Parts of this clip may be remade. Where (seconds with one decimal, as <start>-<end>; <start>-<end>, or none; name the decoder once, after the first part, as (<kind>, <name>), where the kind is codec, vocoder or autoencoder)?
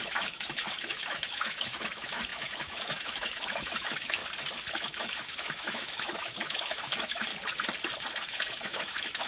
0.0-4.2 (autoencoder, DAC-VAE); 4.7-7.3; 8.2-9.3